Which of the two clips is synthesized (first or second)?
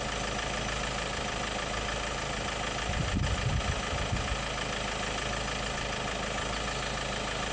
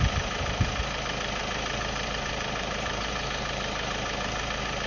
second